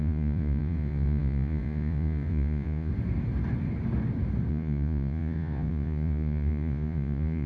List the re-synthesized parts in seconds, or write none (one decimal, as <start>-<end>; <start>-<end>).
0.0-2.9; 4.5-7.5